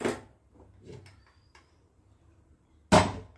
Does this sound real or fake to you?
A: real